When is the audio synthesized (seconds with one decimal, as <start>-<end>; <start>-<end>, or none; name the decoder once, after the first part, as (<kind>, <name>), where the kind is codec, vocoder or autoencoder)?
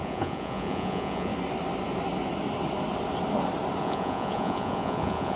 0.0-1.3 (vocoder, Vocos); 3.8-5.4